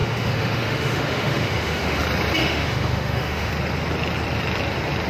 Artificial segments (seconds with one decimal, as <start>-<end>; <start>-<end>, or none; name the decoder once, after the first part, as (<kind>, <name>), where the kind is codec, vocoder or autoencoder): 0.0-2.0 (autoencoder, DAC-VAE); 2.4-3.5